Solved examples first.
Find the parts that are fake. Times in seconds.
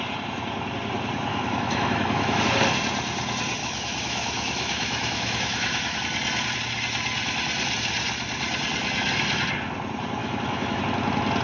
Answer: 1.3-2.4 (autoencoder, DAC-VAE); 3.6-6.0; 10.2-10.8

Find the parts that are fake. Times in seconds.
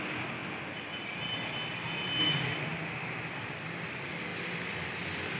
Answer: none